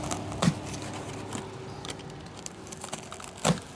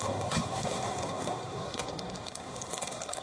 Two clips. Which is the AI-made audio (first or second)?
second